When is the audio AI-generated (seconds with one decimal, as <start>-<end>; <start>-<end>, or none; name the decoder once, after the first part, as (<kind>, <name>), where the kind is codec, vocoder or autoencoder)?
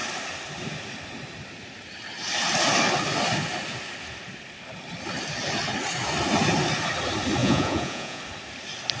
7.4-8.2 (vocoder, Vocos)